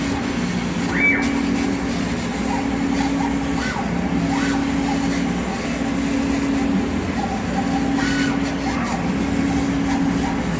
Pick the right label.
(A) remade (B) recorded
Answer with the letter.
B